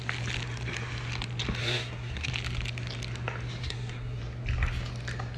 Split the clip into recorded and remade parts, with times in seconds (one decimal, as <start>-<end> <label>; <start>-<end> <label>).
0.0-1.6 recorded; 1.6-2.3 remade; 2.3-3.6 recorded; 3.6-4.2 remade; 4.2-5.4 recorded